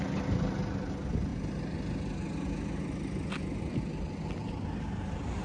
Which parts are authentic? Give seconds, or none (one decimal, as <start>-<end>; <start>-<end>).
0.0-5.4